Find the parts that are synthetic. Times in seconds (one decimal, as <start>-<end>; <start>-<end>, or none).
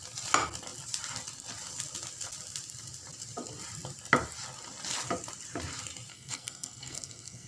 6.1-7.5